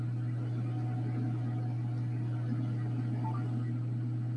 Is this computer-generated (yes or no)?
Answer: no